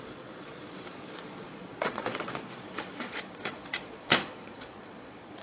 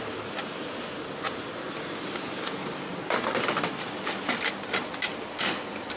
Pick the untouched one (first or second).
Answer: second